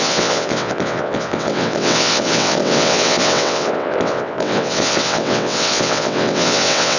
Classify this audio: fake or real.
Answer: fake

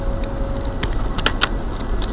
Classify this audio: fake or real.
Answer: real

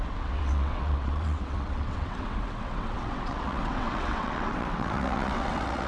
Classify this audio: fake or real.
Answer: fake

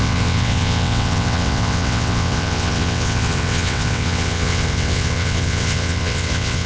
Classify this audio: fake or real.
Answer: fake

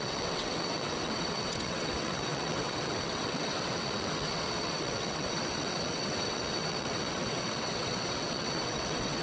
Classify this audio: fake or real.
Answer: fake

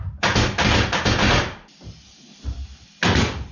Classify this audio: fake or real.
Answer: real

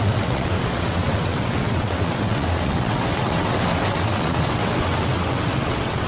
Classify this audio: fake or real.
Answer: fake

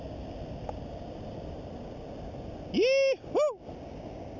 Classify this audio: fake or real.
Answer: real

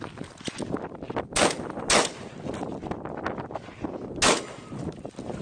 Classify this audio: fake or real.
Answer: real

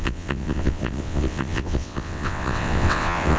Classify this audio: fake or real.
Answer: fake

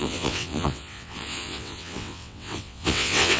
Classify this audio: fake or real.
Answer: fake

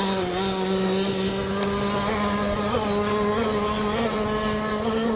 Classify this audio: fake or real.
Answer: real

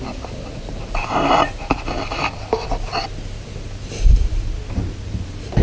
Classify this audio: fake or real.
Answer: real